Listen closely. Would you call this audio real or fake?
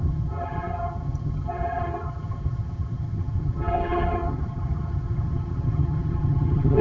fake